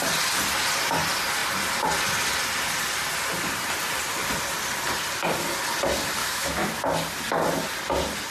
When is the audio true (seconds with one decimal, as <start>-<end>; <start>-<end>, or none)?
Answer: 0.0-6.2; 6.7-8.3